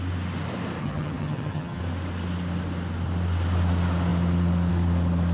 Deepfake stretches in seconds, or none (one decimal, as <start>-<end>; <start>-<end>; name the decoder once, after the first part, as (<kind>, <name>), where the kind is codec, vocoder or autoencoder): 0.8-1.8 (vocoder, HiFi-GAN)

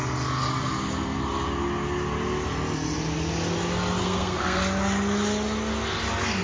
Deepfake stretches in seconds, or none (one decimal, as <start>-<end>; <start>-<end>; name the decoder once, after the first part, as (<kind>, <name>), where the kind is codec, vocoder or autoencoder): 4.0-4.6 (codec, SNAC)

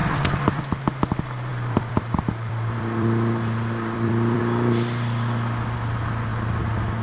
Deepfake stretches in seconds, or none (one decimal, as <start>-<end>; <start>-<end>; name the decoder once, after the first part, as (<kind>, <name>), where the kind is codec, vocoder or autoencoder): 0.0-0.6 (vocoder, BigVGAN v2); 1.5-4.4

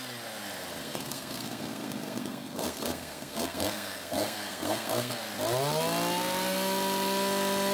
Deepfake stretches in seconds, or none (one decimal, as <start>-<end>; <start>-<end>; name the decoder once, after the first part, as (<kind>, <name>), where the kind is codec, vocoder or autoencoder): 0.8-5.2 (codec, SNAC)

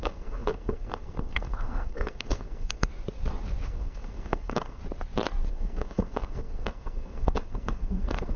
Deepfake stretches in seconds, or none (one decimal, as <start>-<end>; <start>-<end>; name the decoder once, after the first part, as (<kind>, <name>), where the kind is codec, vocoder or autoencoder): 0.0-2.9 (codec, SNAC); 3.6-4.8; 5.5-8.4

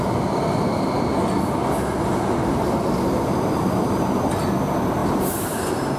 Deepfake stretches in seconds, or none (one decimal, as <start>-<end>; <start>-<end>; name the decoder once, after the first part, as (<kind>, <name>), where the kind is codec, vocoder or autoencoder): 2.1-4.2 (vocoder, BigVGAN v2); 5.0-6.0

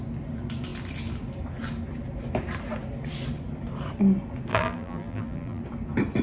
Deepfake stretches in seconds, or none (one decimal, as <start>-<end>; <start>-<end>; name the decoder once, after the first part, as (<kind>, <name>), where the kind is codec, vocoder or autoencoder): 4.5-5.6 (vocoder, BigVGAN v2)